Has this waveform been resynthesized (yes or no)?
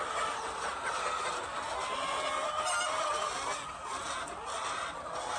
no